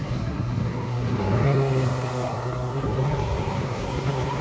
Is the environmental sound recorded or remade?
remade